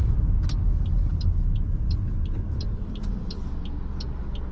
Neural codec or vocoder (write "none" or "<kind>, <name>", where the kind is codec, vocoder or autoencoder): none